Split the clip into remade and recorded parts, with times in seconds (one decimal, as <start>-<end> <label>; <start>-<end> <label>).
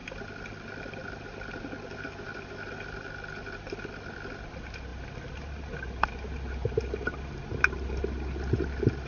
0.0-9.1 recorded